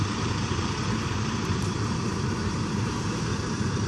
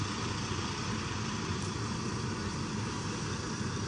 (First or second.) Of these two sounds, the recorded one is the second